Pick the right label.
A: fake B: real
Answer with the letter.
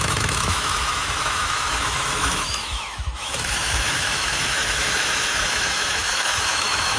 A